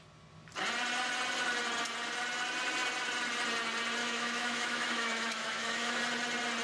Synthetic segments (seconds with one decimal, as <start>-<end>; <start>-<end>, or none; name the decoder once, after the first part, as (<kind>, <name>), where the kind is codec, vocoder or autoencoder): 4.0-6.0 (autoencoder, DAC-VAE)